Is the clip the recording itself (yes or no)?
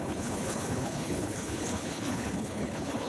no